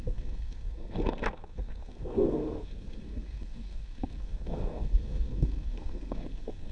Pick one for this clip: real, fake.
fake